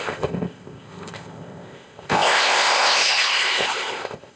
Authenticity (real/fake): fake